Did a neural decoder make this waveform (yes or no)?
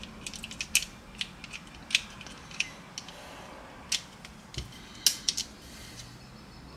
no